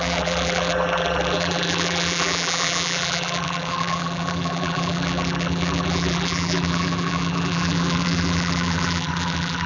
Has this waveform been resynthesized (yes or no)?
yes